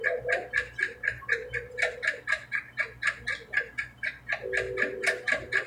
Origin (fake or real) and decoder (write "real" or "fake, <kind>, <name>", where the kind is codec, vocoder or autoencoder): real